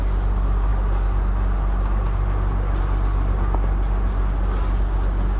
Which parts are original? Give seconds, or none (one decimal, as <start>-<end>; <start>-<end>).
0.0-5.4